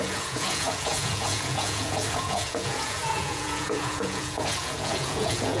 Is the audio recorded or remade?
remade